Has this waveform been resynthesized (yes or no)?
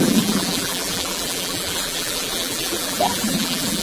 yes